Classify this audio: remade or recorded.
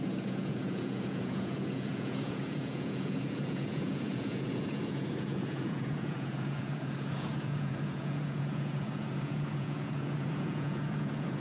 remade